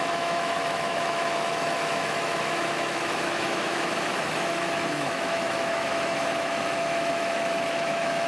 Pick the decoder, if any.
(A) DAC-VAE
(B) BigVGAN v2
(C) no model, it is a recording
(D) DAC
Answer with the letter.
A